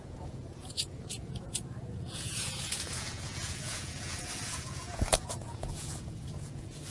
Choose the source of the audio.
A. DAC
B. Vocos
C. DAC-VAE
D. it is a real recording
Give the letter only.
B